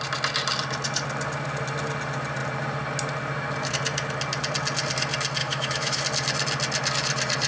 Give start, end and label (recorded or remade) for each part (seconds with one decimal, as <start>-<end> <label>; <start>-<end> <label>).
0.0-5.4 recorded; 5.4-6.0 remade; 6.0-7.5 recorded